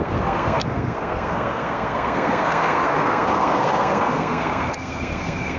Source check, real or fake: fake